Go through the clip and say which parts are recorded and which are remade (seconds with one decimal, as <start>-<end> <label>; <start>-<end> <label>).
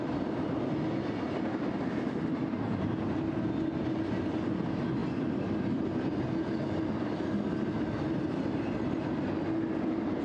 0.0-5.0 recorded; 5.0-5.7 remade; 5.7-10.2 recorded